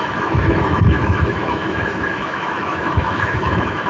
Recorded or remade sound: remade